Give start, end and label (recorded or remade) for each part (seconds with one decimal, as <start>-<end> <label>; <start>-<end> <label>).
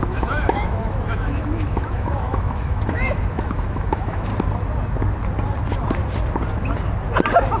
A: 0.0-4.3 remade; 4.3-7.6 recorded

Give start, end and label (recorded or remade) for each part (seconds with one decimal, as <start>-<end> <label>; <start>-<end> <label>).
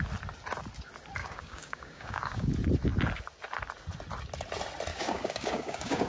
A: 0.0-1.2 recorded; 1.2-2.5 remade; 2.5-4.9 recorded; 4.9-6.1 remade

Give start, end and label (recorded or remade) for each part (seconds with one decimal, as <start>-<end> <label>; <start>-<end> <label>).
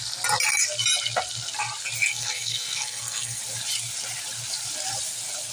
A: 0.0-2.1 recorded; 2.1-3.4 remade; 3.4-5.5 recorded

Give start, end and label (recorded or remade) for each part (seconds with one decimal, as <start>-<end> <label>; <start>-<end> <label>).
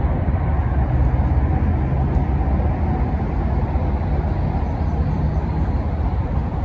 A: 0.0-0.5 remade; 0.5-3.6 recorded; 3.6-6.6 remade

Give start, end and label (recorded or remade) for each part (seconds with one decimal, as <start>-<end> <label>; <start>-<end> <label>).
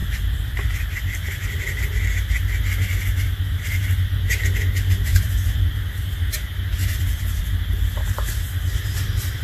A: 0.0-1.8 remade; 1.8-5.1 recorded; 5.1-5.8 remade; 5.8-6.8 recorded; 6.8-7.4 remade; 7.4-9.4 recorded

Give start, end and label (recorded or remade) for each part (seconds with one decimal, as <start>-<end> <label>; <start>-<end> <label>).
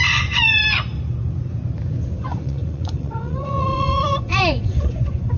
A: 0.0-0.6 remade; 0.6-2.2 recorded; 2.2-5.4 remade